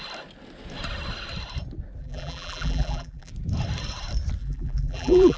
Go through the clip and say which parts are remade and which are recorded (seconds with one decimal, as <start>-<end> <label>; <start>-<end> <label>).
0.0-2.0 recorded; 2.0-3.3 remade; 3.3-4.4 recorded; 4.4-5.4 remade